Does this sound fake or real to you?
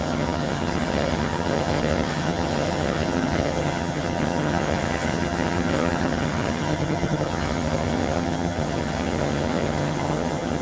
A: fake